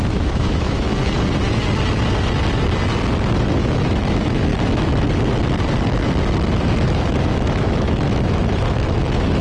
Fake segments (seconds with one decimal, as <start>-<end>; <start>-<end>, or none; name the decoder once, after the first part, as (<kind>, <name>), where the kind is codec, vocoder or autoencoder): 0.0-0.9 (autoencoder, DAC-VAE); 3.4-4.5; 6.5-9.4